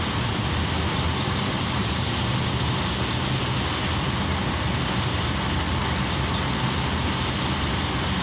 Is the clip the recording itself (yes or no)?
yes